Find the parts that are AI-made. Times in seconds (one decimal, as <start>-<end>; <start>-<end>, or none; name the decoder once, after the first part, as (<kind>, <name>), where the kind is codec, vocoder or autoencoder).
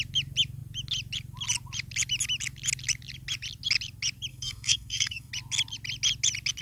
4.3-5.3 (codec, SNAC)